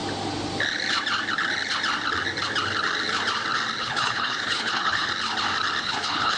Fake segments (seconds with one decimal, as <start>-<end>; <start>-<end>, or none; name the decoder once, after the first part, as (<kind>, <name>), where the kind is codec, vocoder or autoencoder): 3.8-5.1 (codec, HILCodec); 5.8-6.4